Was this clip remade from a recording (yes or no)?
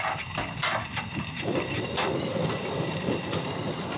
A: no